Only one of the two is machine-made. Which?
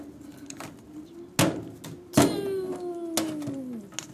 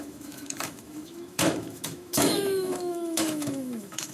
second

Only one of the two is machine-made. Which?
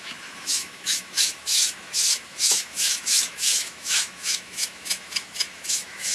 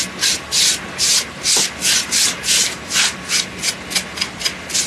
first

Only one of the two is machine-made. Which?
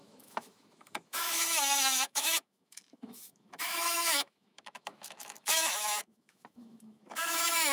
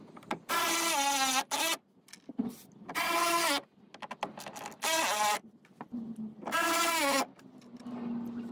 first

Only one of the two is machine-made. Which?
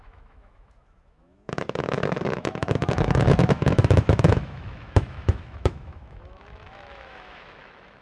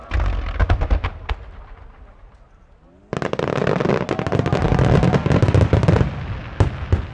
first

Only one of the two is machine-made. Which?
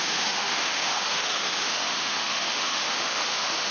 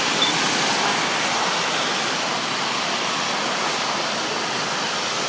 first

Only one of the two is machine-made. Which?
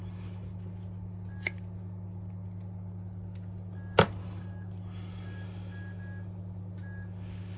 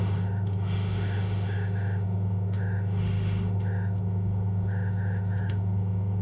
second